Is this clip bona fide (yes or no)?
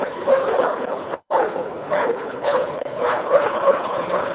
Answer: no